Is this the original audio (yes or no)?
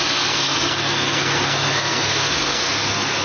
no